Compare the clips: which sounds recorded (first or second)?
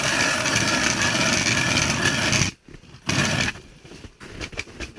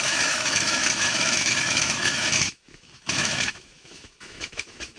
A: first